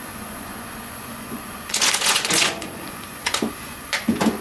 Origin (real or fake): fake